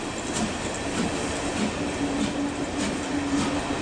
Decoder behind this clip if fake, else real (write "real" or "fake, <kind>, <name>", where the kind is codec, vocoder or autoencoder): real